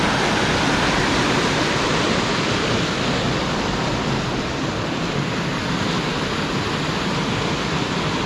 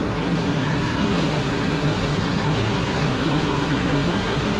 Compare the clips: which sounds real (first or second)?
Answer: first